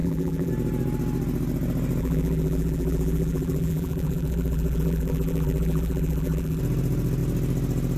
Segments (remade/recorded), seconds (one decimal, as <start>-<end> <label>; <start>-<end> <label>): 0.0-0.5 remade; 0.5-2.0 recorded; 2.0-6.6 remade; 6.6-8.0 recorded